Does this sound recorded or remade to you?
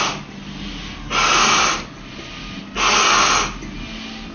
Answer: recorded